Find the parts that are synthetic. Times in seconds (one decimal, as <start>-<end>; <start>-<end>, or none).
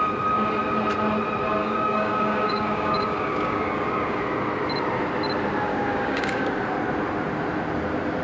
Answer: 1.6-4.2; 5.7-6.5